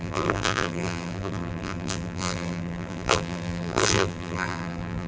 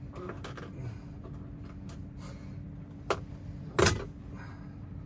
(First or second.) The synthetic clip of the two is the first